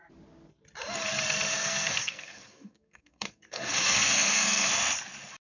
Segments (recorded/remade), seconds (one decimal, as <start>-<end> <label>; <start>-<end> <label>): 0.0-1.5 recorded; 1.5-4.7 remade; 4.7-5.4 recorded